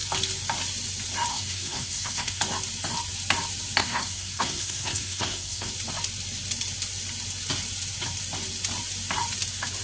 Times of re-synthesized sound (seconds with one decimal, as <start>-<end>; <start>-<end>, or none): 1.3-2.4; 3.8-5.7